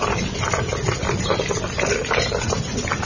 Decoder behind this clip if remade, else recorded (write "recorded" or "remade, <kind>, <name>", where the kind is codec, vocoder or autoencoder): recorded